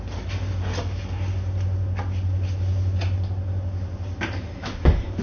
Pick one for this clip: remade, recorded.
recorded